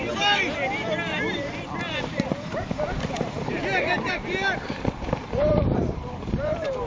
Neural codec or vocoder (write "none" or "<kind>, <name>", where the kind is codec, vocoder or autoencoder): vocoder, BigVGAN v2